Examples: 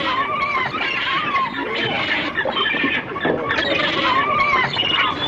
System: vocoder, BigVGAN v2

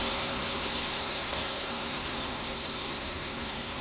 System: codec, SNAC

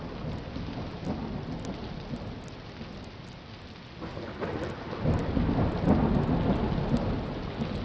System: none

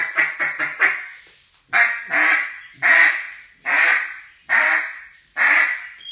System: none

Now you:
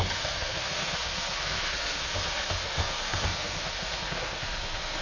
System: codec, SNAC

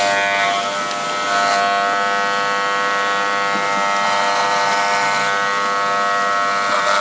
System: none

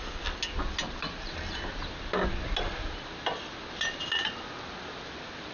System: none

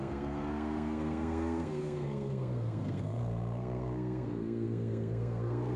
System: codec, SNAC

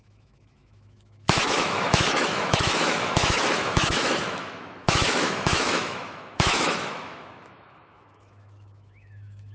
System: autoencoder, DAC-VAE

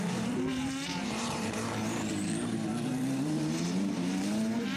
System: vocoder, BigVGAN v2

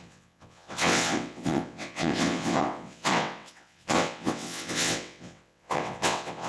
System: vocoder, WaveNeXt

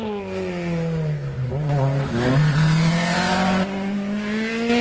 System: none